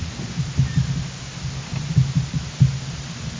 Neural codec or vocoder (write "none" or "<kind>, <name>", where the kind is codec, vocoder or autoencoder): none